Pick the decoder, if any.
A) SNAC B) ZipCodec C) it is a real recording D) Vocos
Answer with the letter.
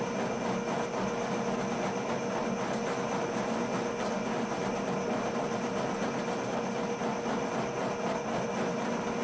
C